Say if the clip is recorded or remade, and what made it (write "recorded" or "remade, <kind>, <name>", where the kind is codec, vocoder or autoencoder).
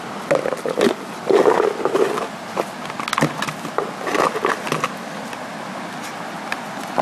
recorded